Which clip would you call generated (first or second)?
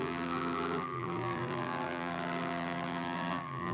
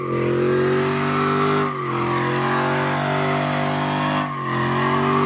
first